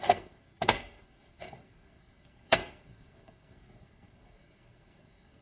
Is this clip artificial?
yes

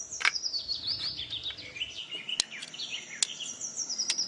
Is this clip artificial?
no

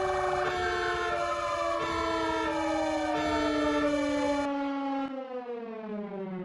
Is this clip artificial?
no